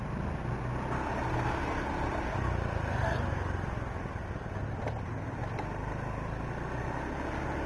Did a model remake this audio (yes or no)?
no